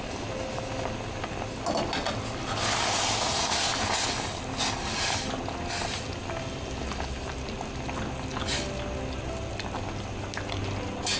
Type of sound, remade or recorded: recorded